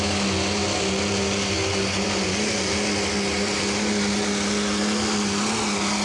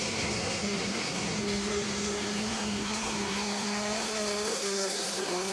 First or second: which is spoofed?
second